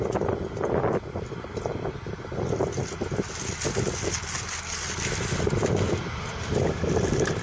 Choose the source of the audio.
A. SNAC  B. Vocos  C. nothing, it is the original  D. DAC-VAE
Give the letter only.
C